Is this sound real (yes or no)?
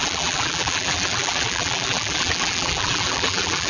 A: no